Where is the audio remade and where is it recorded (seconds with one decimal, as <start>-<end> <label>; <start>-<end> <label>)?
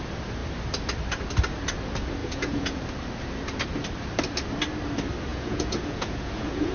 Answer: 0.0-2.2 recorded; 2.2-2.8 remade; 2.8-5.3 recorded; 5.3-6.7 remade